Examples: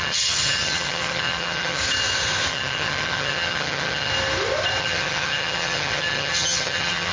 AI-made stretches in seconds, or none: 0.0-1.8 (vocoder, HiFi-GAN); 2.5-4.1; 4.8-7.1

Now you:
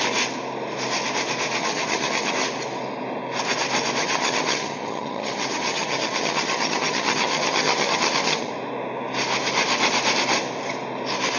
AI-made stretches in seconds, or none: 1.6-2.3 (vocoder, HiFi-GAN); 4.0-8.5

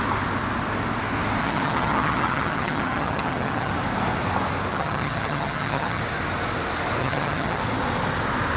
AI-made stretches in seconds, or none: 1.4-3.7 (vocoder, HiFi-GAN); 4.7-6.0; 7.0-7.6